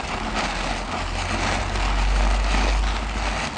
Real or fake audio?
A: real